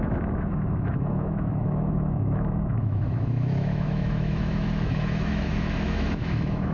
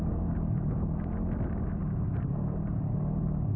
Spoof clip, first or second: first